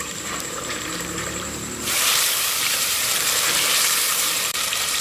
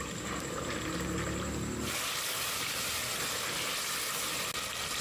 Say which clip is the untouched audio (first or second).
second